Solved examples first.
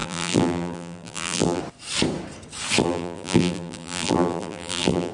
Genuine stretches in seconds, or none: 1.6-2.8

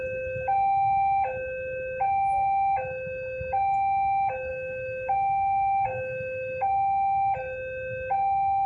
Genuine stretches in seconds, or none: 0.0-4.5; 6.7-8.7

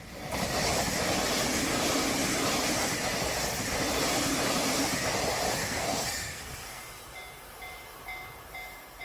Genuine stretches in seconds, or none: 0.0-5.6; 6.8-9.0